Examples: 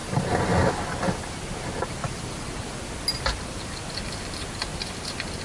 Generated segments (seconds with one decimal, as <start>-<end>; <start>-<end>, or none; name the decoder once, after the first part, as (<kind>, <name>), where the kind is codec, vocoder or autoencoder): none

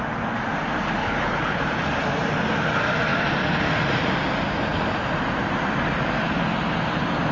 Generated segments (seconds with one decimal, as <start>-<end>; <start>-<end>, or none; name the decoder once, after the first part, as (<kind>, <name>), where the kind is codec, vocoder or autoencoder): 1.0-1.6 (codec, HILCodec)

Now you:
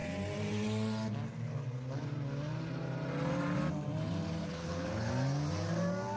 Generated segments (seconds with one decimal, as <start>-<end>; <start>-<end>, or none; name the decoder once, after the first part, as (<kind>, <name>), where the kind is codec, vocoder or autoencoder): 4.4-5.1 (codec, HILCodec)